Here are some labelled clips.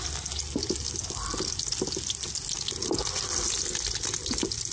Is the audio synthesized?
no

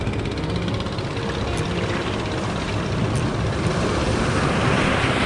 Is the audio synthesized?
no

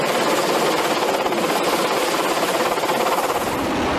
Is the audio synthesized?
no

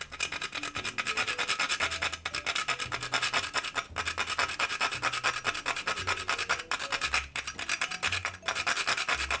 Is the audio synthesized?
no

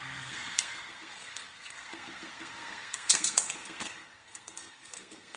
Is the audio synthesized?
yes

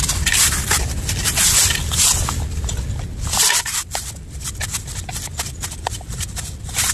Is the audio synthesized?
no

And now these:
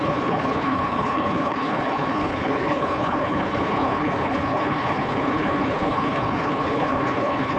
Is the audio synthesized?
yes